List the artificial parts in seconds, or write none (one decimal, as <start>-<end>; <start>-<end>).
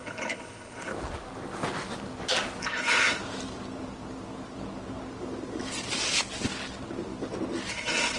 0.0-0.9; 2.6-3.2; 7.7-8.2